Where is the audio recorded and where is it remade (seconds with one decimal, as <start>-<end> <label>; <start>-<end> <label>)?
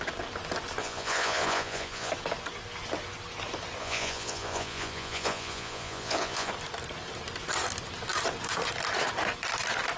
0.0-0.8 recorded; 0.8-2.1 remade; 2.1-3.8 recorded; 3.8-6.5 remade; 6.5-10.0 recorded